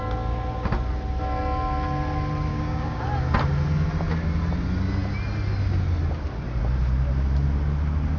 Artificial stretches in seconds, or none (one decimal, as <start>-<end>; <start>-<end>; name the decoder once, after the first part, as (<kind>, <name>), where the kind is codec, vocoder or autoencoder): 2.5-3.0 (codec, DAC)